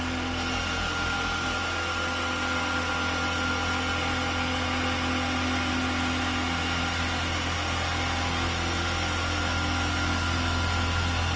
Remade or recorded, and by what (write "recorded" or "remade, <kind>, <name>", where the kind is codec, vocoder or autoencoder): recorded